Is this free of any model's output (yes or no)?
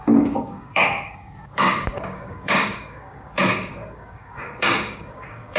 no